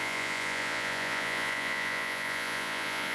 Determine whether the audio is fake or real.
fake